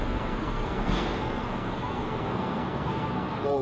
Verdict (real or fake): fake